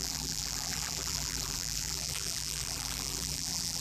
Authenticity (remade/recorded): remade